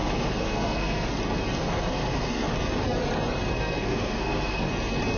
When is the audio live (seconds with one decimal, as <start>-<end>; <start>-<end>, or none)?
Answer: 1.1-1.6; 2.5-3.5; 4.7-5.2